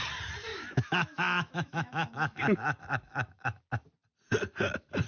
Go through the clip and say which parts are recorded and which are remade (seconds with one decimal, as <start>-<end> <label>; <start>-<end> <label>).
0.0-0.5 recorded; 0.5-3.6 remade; 3.6-5.1 recorded